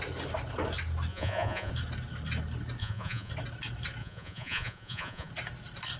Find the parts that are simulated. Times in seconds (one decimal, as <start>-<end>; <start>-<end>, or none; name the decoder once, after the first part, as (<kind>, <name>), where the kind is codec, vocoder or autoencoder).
1.1-1.7 (vocoder, Vocos); 2.8-3.3; 4.0-5.3